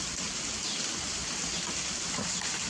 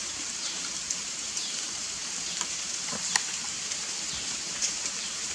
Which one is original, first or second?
first